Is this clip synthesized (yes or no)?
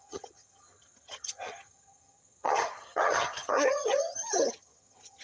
yes